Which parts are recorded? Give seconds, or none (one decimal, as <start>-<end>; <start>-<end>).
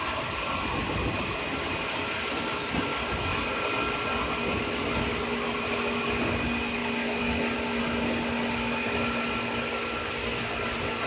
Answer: 0.0-11.1